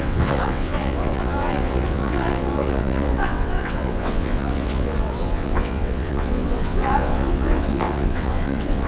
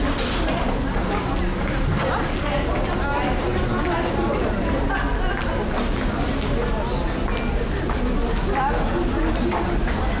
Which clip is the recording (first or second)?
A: second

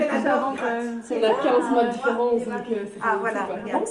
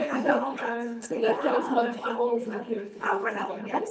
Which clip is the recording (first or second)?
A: first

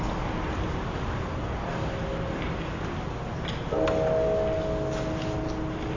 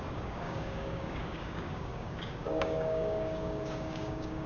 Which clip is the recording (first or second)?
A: first